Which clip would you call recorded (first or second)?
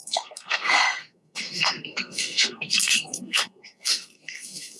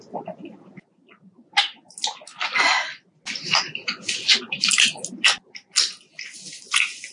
second